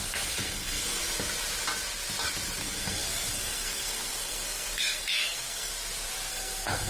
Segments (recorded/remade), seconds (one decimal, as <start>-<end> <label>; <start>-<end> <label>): 0.0-1.0 remade; 1.0-2.6 recorded; 2.6-5.7 remade; 5.7-6.3 recorded; 6.3-6.9 remade